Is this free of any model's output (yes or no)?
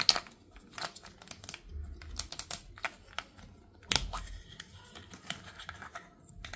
yes